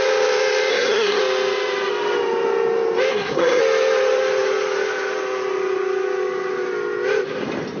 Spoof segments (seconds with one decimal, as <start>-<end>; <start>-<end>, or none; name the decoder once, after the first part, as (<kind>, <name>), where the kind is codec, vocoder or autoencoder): 0.7-1.2 (codec, SNAC); 3.1-3.6